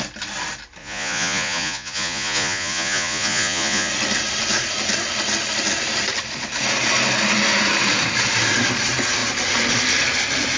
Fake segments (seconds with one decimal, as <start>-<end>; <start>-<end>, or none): 0.8-3.9